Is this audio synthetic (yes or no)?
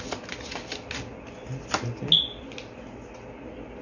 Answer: no